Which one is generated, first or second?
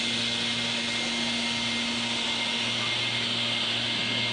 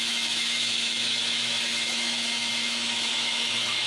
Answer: second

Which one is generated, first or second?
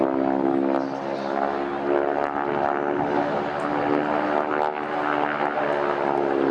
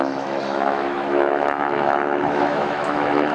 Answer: second